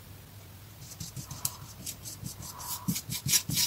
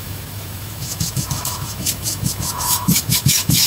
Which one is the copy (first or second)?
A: second